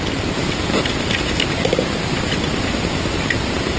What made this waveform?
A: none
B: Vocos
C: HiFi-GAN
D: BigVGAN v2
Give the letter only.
A